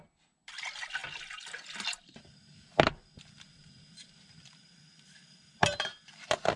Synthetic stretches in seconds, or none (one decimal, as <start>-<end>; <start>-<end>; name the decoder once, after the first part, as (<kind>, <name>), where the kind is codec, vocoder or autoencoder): 0.0-1.0 (vocoder, BigVGAN v2); 2.0-2.4; 3.2-6.6